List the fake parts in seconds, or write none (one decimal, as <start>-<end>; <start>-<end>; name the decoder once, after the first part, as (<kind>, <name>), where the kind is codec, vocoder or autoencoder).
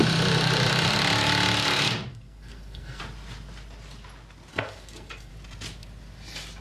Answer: 2.1-3.0 (codec, SNAC); 4.5-5.3